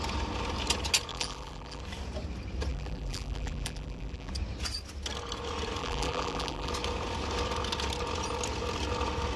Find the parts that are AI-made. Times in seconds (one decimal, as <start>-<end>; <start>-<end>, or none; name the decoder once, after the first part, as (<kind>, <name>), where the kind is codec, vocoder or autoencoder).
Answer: 1.1-1.8 (vocoder, BigVGAN v2); 2.7-4.3; 5.8-6.7